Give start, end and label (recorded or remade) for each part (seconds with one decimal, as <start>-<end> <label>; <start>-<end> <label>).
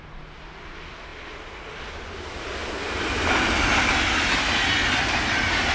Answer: 0.0-5.7 recorded